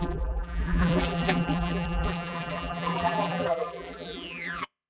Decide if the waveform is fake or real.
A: fake